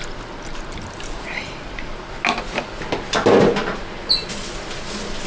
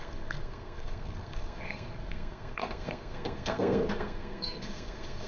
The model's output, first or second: second